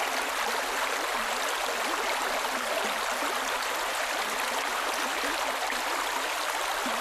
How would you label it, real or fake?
real